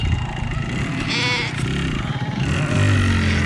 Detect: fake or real real